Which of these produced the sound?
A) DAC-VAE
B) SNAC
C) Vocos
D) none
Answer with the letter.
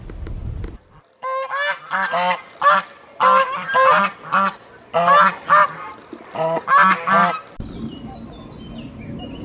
D